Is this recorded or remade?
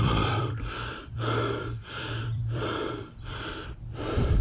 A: remade